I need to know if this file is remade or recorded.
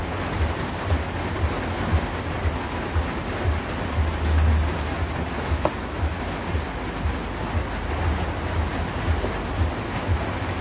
recorded